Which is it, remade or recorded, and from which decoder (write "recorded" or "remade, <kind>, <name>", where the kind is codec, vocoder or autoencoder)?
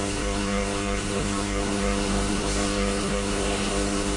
remade, codec, SNAC